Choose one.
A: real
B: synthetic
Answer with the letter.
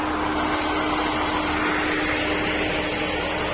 A